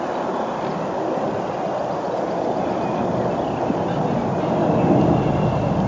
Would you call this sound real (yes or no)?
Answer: yes